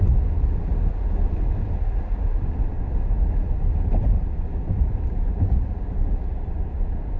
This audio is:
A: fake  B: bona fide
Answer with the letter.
B